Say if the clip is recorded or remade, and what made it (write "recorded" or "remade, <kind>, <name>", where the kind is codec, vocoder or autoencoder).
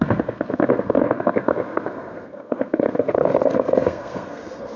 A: remade, codec, SNAC